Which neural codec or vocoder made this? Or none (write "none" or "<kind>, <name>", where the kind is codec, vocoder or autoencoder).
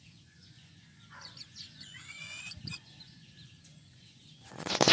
vocoder, Vocos